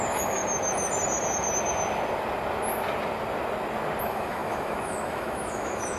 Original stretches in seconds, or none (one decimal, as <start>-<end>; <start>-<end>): 0.4-4.0